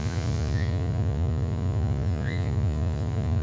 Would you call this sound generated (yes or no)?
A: yes